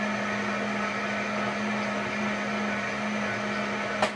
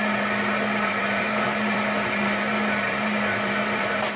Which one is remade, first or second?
second